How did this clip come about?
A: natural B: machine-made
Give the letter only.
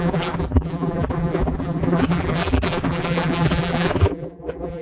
B